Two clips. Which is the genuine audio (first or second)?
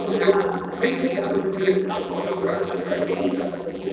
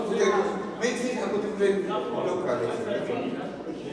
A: second